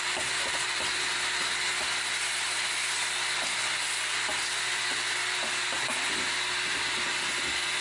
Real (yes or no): yes